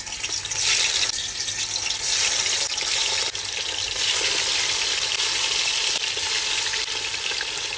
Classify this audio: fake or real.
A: real